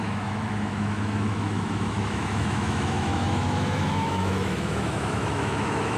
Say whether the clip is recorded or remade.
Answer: remade